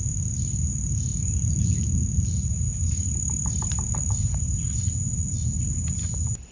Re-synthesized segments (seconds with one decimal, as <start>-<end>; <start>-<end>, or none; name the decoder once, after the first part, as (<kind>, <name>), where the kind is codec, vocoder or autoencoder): none